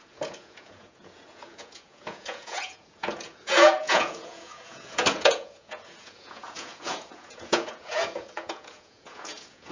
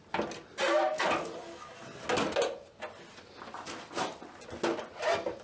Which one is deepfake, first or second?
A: first